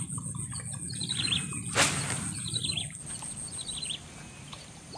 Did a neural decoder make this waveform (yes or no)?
no